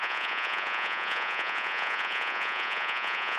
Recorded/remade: remade